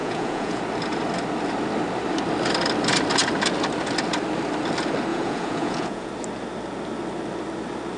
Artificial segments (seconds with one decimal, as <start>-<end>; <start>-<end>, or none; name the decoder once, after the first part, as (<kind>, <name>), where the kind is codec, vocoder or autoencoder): 0.0-0.6 (vocoder, Vocos); 5.1-6.1

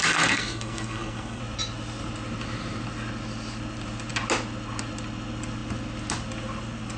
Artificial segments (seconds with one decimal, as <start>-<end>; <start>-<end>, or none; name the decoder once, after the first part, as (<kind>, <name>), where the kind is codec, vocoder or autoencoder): 0.0-1.4 (codec, SNAC)

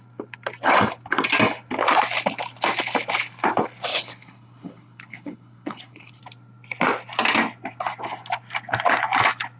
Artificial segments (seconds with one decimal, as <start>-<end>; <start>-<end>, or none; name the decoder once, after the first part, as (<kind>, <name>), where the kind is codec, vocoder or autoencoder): 3.9-6.2 (codec, HILCodec)

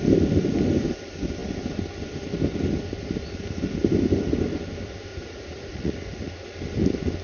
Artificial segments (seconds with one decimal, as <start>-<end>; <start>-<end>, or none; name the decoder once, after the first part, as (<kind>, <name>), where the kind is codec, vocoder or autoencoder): 5.1-6.3 (vocoder, Vocos)

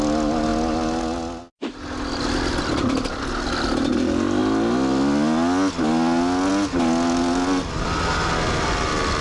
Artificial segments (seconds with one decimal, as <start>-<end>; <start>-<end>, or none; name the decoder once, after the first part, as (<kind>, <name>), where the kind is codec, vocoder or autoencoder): none

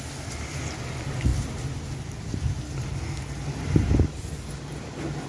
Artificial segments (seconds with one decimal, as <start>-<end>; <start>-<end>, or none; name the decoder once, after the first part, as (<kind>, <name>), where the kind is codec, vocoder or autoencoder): none